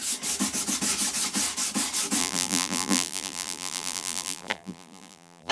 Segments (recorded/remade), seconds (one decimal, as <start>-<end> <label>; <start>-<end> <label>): 0.0-2.2 recorded; 2.2-5.5 remade